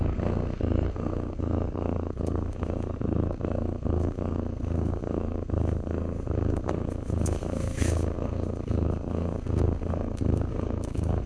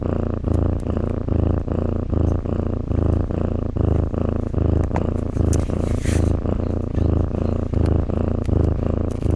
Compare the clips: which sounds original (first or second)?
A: second